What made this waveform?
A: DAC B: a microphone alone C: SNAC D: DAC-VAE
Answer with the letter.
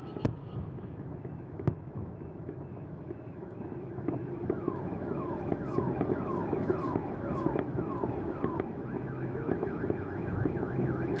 D